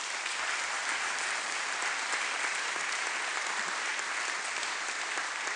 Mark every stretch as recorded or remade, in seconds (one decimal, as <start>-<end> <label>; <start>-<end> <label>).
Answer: 0.0-3.9 remade; 3.9-5.1 recorded; 5.1-5.6 remade

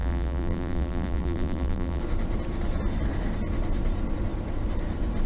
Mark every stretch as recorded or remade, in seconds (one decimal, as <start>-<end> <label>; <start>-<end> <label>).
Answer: 0.0-2.0 remade; 2.0-5.3 recorded

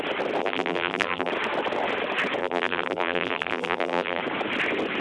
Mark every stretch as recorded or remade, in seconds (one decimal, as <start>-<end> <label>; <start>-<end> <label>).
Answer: 0.0-0.4 recorded; 0.4-1.3 remade; 1.3-2.4 recorded; 2.4-4.2 remade; 4.2-5.0 recorded

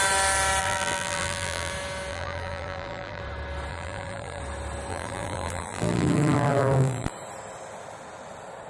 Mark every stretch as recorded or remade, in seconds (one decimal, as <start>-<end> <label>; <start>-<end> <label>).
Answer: 0.0-0.6 recorded; 0.6-1.7 remade; 1.7-2.1 recorded; 2.1-3.2 remade; 3.2-3.7 recorded; 3.7-4.4 remade; 4.4-4.9 recorded; 4.9-7.1 remade; 7.1-8.7 recorded

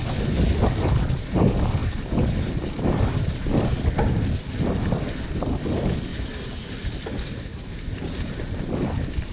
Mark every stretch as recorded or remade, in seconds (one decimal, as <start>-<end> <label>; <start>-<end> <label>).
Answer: 0.0-6.1 recorded; 6.1-6.7 remade; 6.7-7.5 recorded; 7.5-8.7 remade; 8.7-9.3 recorded

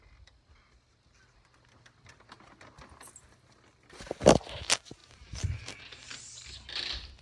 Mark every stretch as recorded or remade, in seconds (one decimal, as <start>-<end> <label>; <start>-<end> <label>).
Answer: 0.0-5.0 recorded; 5.0-5.8 remade; 5.8-7.2 recorded

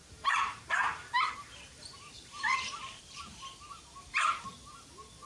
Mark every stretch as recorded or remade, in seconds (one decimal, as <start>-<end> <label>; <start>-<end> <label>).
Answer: 0.0-3.2 remade; 3.2-5.3 recorded